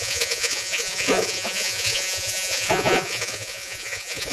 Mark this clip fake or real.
fake